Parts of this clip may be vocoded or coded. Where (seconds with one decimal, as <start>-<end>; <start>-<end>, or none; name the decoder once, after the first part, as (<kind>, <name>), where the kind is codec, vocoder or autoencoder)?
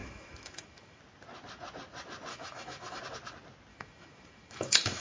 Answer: 0.0-1.0 (autoencoder, DAC-VAE); 2.3-3.0; 3.7-5.0